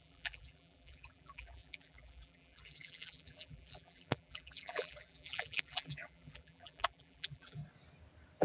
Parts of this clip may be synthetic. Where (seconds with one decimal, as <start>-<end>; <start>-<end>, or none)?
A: 0.0-7.6